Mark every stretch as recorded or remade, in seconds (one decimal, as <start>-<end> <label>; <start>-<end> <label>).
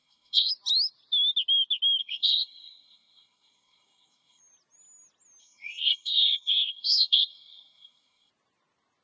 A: 0.0-0.5 remade; 0.5-2.0 recorded; 2.0-4.4 remade; 4.4-5.4 recorded; 5.4-8.3 remade; 8.3-9.0 recorded